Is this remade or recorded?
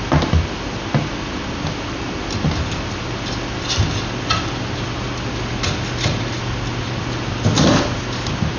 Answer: recorded